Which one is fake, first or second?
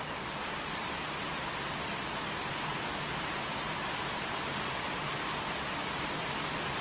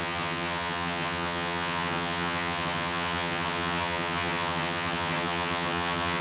second